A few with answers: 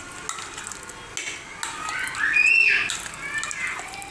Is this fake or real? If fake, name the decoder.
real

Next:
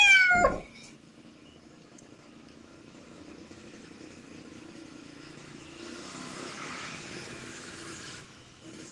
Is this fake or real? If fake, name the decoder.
fake, autoencoder, DAC-VAE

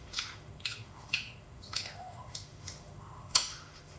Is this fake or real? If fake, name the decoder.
fake, autoencoder, DAC-VAE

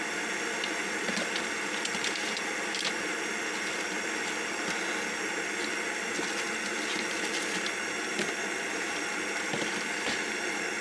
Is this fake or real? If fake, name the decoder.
real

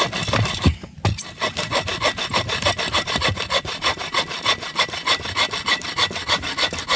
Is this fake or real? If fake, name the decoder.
real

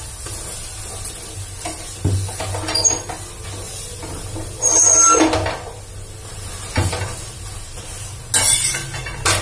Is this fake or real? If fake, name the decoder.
real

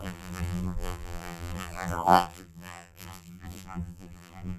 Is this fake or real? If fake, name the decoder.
fake, vocoder, BigVGAN v2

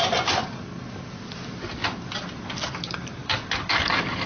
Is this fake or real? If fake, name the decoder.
real